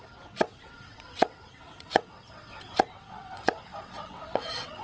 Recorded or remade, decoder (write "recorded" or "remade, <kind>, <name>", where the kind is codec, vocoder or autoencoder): remade, vocoder, WaveNeXt